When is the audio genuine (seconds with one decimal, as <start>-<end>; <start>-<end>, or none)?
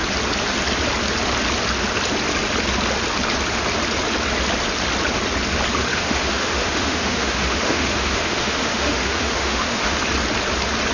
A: 0.0-5.9; 10.0-10.9